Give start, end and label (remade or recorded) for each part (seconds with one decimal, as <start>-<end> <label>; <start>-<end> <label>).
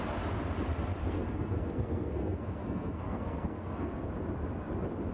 0.0-1.0 recorded; 1.0-4.1 remade; 4.1-5.1 recorded